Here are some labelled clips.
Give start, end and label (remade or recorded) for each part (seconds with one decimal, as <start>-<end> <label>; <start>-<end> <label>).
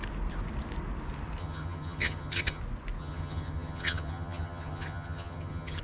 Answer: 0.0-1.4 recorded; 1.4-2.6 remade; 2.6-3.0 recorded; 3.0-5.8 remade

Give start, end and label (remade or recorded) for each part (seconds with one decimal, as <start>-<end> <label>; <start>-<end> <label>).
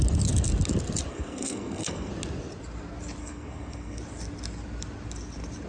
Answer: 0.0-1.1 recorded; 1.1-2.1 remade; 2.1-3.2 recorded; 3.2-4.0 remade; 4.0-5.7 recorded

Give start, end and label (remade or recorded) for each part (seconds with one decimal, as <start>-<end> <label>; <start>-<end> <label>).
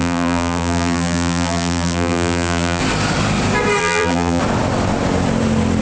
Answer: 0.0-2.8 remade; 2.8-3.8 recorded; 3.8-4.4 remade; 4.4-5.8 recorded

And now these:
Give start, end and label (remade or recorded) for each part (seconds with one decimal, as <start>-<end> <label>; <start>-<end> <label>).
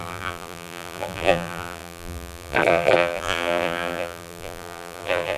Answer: 0.0-5.4 remade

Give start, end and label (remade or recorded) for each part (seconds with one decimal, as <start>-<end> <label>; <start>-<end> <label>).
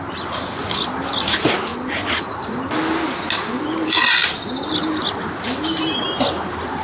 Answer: 0.0-6.8 recorded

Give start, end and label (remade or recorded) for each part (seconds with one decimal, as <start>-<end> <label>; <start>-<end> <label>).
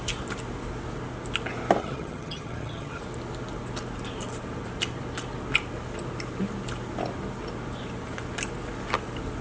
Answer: 0.0-1.8 recorded; 1.8-3.0 remade; 3.0-9.4 recorded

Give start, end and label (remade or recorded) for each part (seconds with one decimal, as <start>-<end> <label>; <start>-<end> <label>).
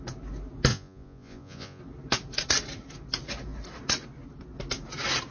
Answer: 0.0-0.7 recorded; 0.7-1.8 remade; 1.8-5.3 recorded